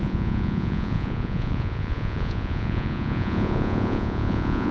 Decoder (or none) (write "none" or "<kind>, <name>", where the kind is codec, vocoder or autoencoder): vocoder, Vocos